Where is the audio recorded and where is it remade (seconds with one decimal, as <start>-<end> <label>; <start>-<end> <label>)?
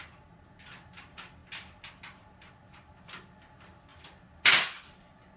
0.0-5.4 recorded